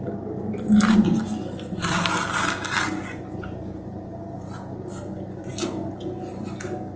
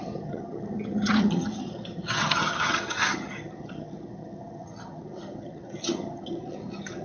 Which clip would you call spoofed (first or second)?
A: second